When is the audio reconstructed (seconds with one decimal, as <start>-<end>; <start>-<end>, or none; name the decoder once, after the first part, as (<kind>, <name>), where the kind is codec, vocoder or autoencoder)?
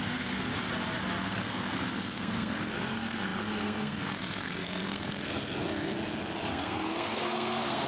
0.0-0.5 (codec, SNAC); 1.2-5.9; 6.5-7.9